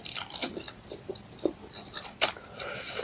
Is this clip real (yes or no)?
no